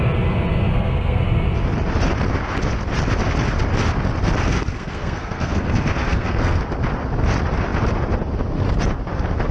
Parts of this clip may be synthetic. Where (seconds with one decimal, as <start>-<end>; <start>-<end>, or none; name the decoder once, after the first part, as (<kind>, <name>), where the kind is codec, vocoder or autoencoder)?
0.7-1.2 (codec, SNAC); 4.4-6.6

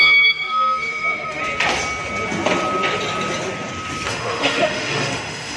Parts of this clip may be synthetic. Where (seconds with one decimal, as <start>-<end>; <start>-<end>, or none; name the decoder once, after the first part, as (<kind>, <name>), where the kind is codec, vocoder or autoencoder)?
0.0-1.4 (autoencoder, DAC-VAE); 4.1-5.6

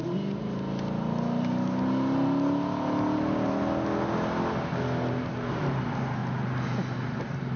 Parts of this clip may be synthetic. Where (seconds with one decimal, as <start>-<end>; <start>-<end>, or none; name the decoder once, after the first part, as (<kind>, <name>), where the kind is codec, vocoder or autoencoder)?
none

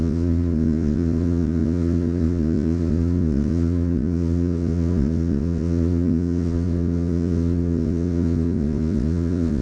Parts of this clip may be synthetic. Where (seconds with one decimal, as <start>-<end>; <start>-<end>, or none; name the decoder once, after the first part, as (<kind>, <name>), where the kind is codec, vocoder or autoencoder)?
0.0-9.6 (vocoder, Vocos)

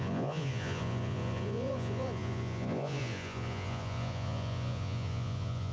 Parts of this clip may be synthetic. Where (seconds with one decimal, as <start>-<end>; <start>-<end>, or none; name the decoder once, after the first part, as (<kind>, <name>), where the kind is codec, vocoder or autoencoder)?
0.0-5.7 (vocoder, Vocos)